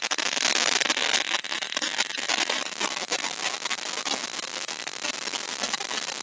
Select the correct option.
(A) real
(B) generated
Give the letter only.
A